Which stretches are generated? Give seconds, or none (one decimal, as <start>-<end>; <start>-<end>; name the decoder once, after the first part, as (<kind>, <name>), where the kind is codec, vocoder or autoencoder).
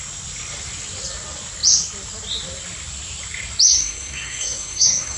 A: 3.7-5.2 (codec, SNAC)